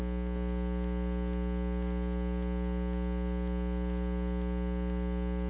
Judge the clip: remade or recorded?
recorded